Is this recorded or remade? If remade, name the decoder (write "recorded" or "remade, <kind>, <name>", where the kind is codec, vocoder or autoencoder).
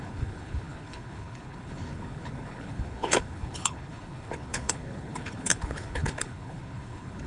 remade, codec, HILCodec